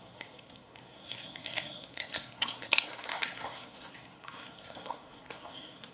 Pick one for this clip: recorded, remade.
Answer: remade